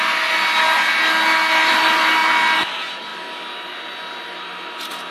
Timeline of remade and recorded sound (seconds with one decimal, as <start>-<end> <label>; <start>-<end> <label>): 0.0-5.1 recorded